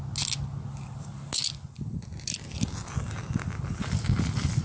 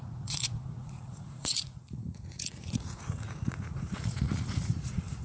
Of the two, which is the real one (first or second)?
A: first